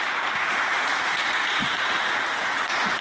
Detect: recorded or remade remade